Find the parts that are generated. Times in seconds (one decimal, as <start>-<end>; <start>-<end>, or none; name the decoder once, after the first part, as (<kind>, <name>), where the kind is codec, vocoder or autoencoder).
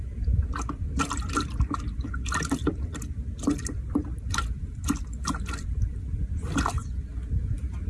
0.0-7.1 (vocoder, BigVGAN v2)